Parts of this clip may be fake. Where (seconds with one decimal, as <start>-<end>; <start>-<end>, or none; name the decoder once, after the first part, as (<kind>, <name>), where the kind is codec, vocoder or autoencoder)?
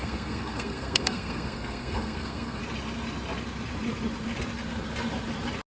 0.0-2.6 (codec, SNAC)